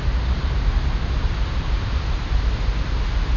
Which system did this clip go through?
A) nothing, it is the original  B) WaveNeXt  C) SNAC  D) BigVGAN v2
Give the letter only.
A